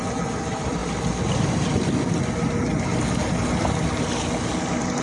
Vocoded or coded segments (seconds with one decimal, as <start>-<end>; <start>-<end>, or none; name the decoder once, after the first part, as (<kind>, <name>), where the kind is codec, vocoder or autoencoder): none